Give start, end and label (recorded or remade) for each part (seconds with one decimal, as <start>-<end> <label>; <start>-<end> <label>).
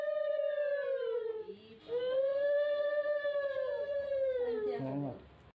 0.0-5.6 recorded